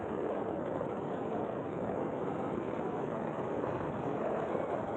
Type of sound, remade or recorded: remade